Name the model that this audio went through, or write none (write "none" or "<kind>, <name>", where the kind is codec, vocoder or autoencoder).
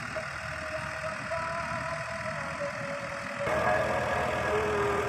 none